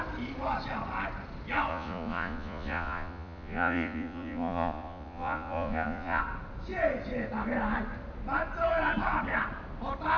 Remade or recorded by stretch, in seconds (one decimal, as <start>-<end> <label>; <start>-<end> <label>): 0.0-1.7 recorded; 1.7-6.2 remade; 6.2-10.2 recorded